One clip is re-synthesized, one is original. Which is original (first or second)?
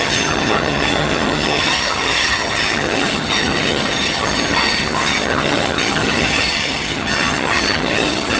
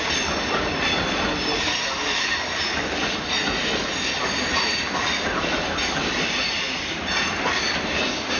second